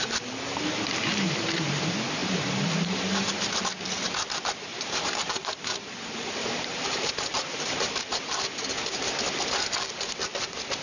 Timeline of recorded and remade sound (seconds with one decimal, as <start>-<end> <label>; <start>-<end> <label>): 0.0-1.1 recorded; 1.1-1.7 remade; 1.7-2.2 recorded; 2.2-3.6 remade; 3.6-4.7 recorded; 4.7-8.2 remade; 8.2-10.8 recorded